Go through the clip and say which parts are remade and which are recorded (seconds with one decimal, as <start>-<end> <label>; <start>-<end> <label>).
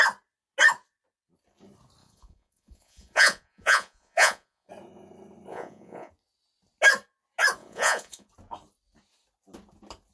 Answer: 0.0-2.0 recorded; 2.0-4.7 remade; 4.7-5.5 recorded; 5.5-6.1 remade; 6.1-7.6 recorded; 7.6-8.3 remade; 8.3-10.1 recorded